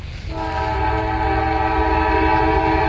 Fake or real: real